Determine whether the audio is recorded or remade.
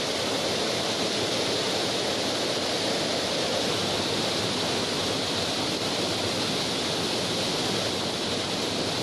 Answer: recorded